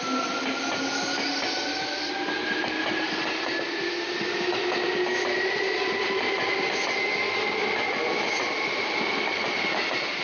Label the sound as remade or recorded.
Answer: recorded